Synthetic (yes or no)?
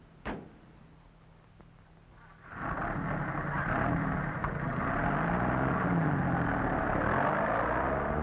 no